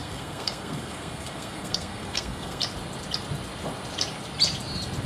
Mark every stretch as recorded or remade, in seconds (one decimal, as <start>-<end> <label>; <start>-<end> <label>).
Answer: 0.0-2.6 remade; 2.6-5.1 recorded